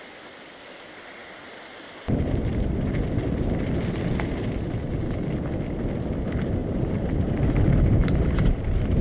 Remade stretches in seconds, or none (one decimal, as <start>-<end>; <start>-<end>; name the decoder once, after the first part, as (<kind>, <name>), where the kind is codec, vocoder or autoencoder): 6.6-7.4 (vocoder, BigVGAN v2); 8.0-9.0